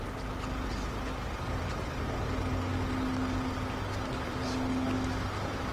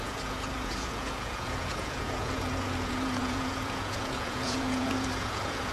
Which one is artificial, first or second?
second